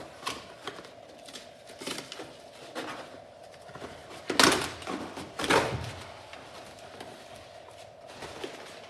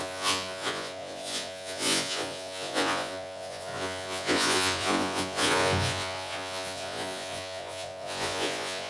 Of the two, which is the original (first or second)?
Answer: first